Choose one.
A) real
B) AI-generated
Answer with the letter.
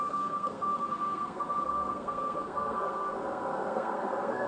B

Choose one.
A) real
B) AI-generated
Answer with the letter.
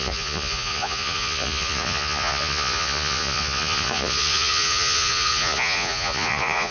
B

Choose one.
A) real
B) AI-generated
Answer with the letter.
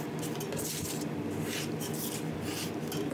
A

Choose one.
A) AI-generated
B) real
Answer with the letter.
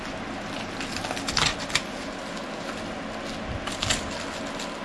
B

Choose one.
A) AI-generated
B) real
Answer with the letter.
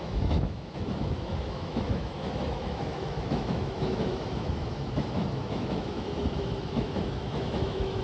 A